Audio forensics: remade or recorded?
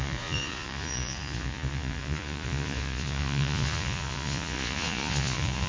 remade